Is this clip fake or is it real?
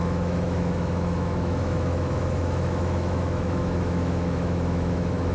fake